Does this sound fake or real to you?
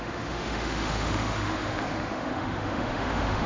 fake